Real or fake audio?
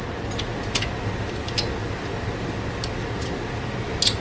real